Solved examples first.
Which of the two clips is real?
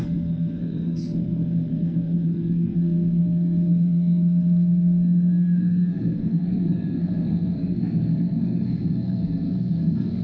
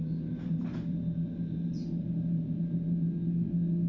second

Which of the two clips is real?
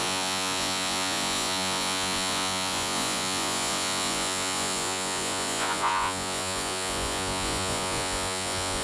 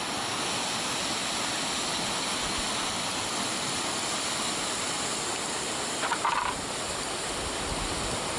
second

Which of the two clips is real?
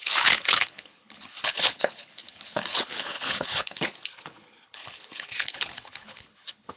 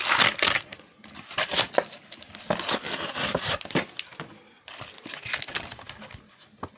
second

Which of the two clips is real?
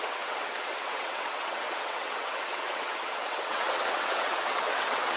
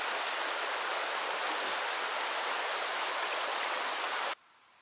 second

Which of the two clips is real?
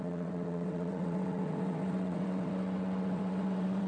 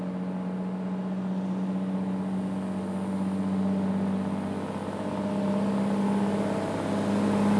second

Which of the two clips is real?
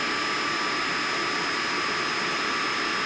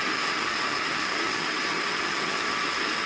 first